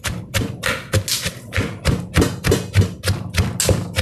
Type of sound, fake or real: real